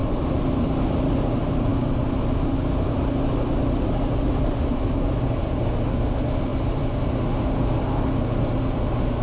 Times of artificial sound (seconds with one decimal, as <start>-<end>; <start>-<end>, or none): none